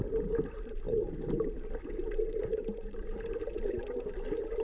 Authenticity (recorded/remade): remade